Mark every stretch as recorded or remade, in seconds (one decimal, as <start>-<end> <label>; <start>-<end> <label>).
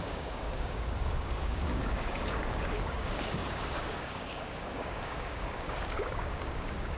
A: 0.0-7.0 remade